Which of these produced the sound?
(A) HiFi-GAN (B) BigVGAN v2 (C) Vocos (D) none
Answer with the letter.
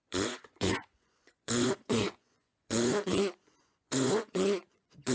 C